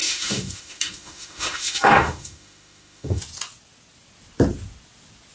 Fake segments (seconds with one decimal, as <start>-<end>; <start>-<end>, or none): 0.0-3.2